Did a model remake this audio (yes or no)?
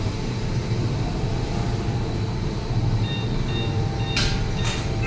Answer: no